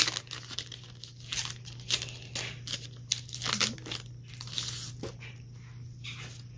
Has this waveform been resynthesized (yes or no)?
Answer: no